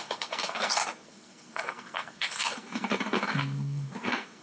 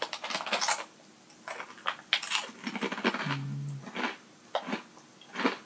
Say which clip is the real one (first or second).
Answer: second